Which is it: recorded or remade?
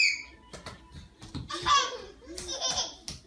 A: recorded